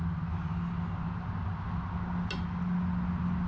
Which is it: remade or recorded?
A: recorded